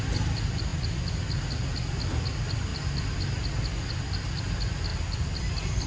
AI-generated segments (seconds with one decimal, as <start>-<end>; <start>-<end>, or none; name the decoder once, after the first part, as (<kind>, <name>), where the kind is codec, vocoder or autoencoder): none